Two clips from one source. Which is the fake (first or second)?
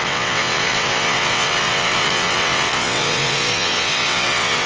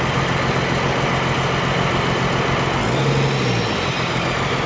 first